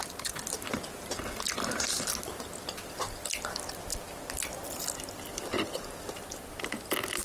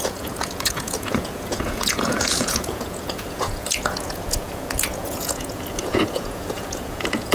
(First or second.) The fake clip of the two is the second